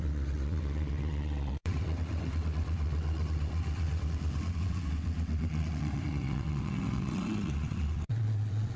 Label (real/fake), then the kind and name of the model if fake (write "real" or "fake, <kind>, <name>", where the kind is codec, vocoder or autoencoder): fake, vocoder, WaveNeXt